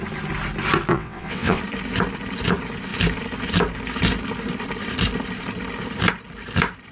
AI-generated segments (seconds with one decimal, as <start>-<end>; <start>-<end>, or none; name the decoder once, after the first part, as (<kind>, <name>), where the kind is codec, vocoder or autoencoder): 0.9-1.6 (vocoder, WaveNeXt)